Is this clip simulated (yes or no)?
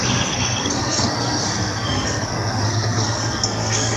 yes